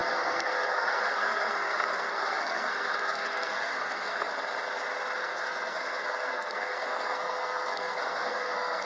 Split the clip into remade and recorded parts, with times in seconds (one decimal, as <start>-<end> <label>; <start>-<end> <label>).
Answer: 0.0-4.3 remade; 4.3-5.2 recorded; 5.2-8.9 remade